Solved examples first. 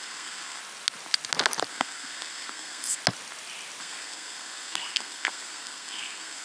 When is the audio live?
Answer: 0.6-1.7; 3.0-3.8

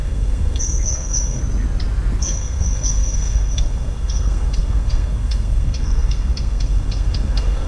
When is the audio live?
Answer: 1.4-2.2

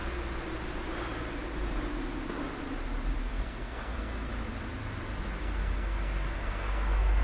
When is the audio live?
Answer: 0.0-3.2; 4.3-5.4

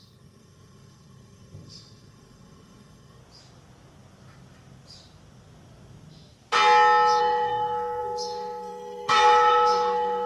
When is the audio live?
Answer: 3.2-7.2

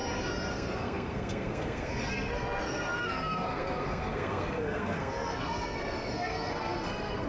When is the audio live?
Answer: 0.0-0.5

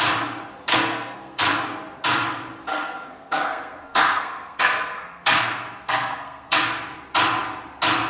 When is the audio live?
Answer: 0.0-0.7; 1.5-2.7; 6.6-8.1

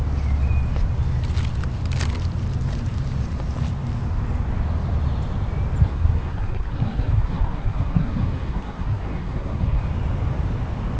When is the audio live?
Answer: 0.0-5.9; 9.8-11.0

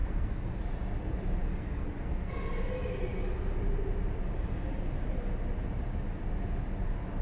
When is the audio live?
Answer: 0.6-1.5; 2.3-7.2